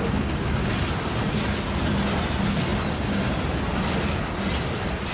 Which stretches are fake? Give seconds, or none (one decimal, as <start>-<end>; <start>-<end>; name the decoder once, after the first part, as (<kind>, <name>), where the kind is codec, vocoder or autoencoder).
none